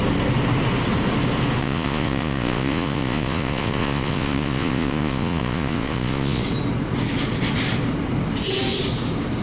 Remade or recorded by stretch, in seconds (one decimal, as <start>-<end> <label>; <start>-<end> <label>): 0.0-1.6 recorded; 1.6-6.4 remade; 6.4-9.4 recorded